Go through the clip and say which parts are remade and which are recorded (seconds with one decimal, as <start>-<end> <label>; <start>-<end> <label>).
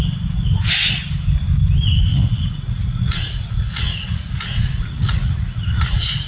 0.0-2.1 recorded; 2.1-6.3 remade